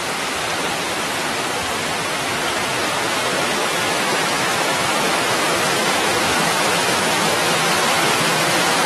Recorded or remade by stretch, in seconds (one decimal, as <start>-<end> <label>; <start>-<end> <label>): 0.0-3.6 recorded; 3.6-8.9 remade

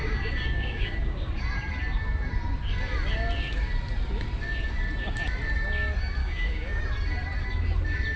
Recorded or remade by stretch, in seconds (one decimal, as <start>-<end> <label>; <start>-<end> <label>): 0.0-1.3 remade; 1.3-6.2 recorded; 6.2-6.8 remade; 6.8-8.2 recorded